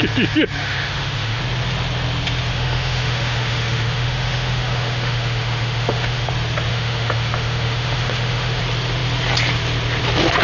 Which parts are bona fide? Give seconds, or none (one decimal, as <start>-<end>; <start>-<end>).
0.0-0.6; 1.4-2.5; 6.3-6.7; 8.6-10.4